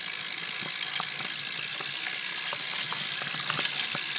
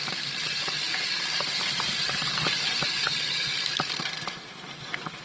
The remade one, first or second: second